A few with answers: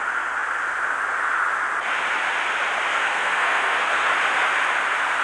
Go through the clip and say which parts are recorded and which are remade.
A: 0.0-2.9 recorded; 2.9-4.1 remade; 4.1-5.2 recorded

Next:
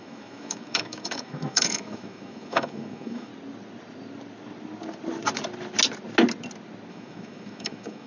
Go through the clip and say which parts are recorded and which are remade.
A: 0.0-3.3 remade; 3.3-6.9 recorded; 6.9-8.1 remade

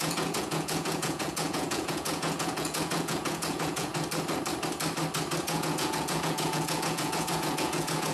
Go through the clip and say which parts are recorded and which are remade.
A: 0.0-3.9 remade; 3.9-5.4 recorded; 5.4-8.1 remade

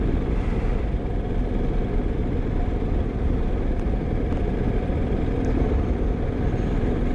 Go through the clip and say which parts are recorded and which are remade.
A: 0.0-7.1 recorded

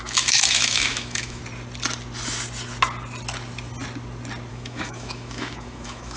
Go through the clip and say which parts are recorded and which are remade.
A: 0.0-1.4 remade; 1.4-4.5 recorded; 4.5-6.2 remade

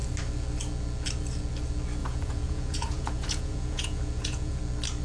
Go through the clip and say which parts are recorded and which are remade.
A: 0.0-2.0 recorded; 2.0-4.6 remade; 4.6-5.0 recorded

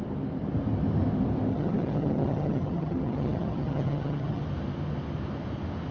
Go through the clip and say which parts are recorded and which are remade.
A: 0.0-1.5 recorded; 1.5-4.4 remade; 4.4-5.9 recorded

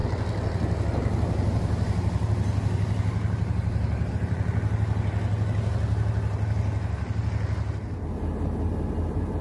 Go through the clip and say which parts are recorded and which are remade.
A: 0.0-9.4 recorded